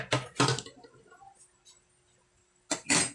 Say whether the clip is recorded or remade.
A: recorded